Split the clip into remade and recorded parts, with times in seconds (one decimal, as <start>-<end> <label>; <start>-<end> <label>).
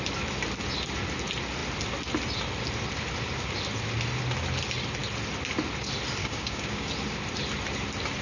0.0-6.2 recorded; 6.2-6.9 remade; 6.9-8.2 recorded